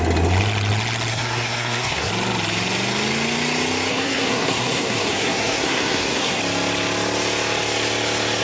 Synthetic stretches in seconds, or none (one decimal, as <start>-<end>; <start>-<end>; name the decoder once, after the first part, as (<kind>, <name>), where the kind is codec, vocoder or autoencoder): 1.1-2.1 (codec, SNAC); 3.9-6.4